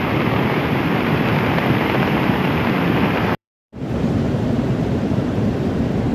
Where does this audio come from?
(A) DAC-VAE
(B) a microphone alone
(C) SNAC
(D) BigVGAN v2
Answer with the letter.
D